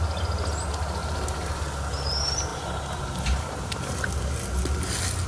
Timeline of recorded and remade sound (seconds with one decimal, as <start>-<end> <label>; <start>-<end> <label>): 0.0-1.0 recorded; 1.0-1.6 remade; 1.6-2.5 recorded; 2.5-3.9 remade; 3.9-5.3 recorded